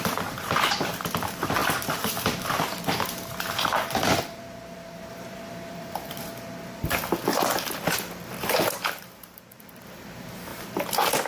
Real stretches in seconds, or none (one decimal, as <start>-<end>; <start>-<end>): 6.3-8.4